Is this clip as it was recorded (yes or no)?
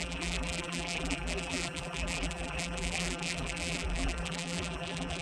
no